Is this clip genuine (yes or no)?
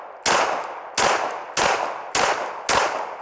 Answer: yes